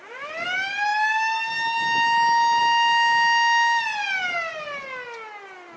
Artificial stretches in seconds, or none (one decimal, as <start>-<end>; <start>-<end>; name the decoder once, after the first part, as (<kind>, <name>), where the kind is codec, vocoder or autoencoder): none